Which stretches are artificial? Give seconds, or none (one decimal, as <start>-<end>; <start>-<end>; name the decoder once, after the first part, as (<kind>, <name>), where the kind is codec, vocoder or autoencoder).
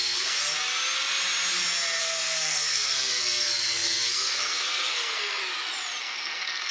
0.0-0.4 (codec, SNAC); 2.0-5.4; 6.0-6.7